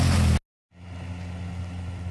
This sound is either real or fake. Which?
real